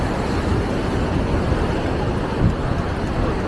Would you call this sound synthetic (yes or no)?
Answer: no